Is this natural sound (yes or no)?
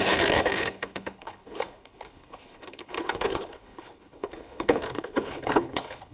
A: no